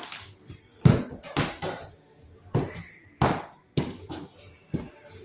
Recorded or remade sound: recorded